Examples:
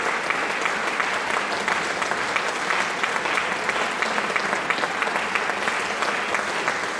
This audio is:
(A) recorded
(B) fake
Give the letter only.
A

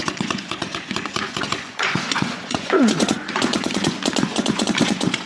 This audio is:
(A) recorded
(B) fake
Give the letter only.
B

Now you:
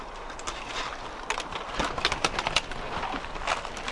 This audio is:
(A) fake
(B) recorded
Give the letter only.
B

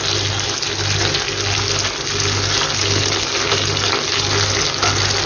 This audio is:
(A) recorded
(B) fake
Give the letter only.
A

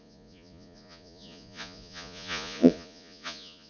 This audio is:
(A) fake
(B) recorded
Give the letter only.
A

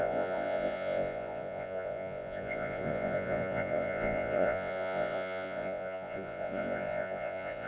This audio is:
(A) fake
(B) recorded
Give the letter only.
A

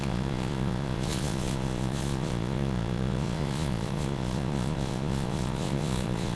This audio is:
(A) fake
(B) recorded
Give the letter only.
A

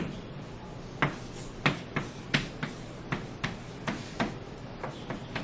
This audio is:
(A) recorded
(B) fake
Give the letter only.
A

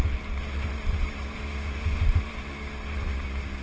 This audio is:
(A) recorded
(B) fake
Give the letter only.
A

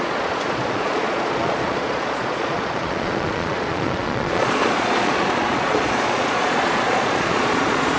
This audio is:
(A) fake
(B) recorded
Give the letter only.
A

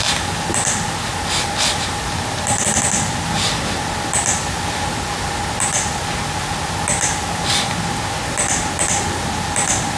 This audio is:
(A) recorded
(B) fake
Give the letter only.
A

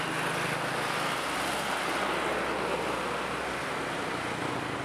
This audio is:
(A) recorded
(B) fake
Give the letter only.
A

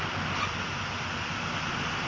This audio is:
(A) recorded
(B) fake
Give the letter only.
A